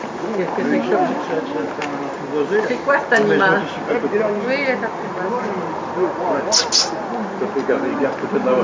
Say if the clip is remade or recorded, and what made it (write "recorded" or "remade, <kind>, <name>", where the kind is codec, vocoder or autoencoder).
recorded